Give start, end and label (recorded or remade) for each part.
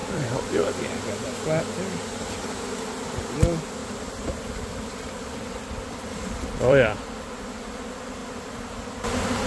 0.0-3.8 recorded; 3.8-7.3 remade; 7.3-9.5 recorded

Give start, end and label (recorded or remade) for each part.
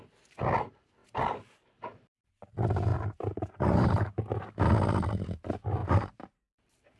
0.0-1.0 recorded; 1.0-2.5 remade; 2.5-2.9 recorded; 2.9-4.3 remade; 4.3-5.8 recorded; 5.8-7.0 remade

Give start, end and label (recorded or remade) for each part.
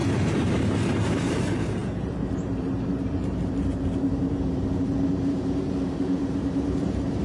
0.0-7.2 remade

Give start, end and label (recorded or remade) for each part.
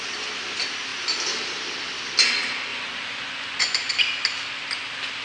0.0-2.7 recorded; 2.7-3.9 remade; 3.9-5.2 recorded